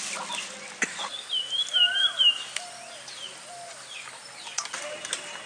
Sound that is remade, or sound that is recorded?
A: recorded